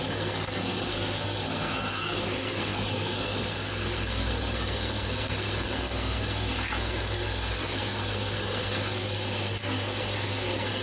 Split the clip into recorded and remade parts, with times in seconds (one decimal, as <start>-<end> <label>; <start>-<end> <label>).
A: 0.0-10.8 remade